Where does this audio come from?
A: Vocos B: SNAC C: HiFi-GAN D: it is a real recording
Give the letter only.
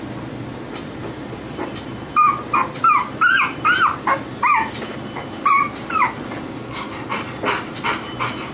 D